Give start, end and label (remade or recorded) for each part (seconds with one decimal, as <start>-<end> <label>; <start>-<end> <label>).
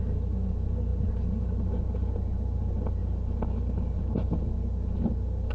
0.0-5.5 recorded